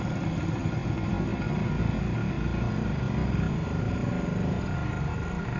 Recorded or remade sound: recorded